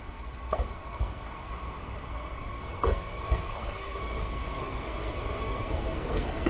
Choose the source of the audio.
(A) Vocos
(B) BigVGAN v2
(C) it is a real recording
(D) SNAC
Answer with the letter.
D